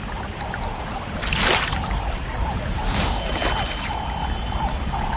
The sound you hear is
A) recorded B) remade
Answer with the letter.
A